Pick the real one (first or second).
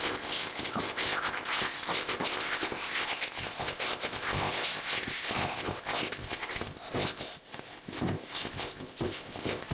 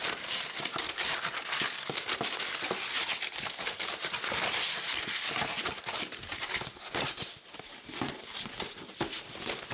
second